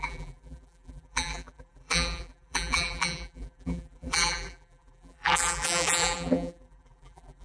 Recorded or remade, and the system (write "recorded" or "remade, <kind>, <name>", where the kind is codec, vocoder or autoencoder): remade, vocoder, BigVGAN v2